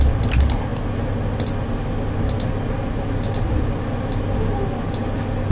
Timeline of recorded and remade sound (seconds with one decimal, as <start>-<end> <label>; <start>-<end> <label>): 0.0-5.5 recorded